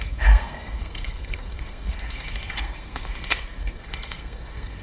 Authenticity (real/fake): fake